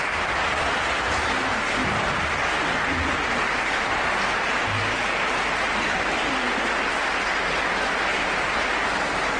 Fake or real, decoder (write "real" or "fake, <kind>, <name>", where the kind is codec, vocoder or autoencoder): real